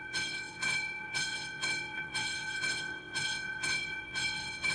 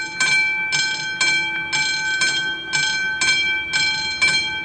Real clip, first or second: second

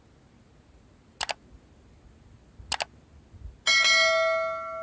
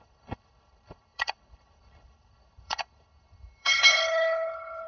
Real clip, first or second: first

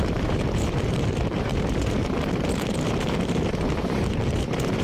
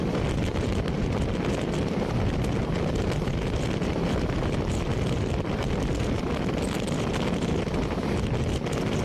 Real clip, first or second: second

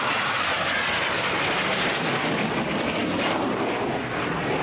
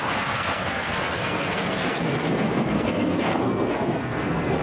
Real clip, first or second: first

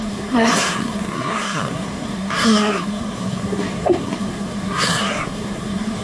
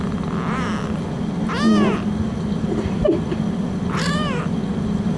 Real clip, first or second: second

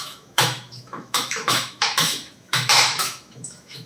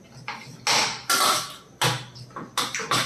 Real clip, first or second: second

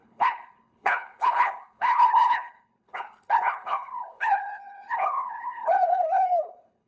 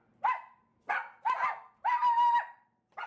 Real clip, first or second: second